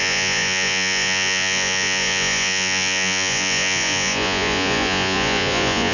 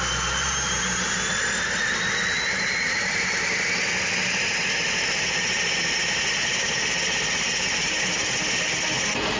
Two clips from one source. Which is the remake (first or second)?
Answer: first